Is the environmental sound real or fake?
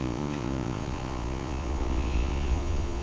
fake